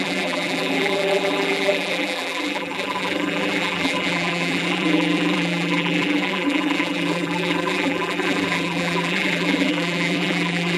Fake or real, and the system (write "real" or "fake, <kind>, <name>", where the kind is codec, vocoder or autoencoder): fake, vocoder, BigVGAN v2